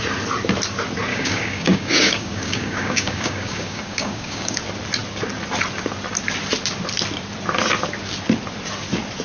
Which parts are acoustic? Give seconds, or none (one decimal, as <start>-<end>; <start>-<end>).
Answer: 0.0-1.1; 4.6-9.2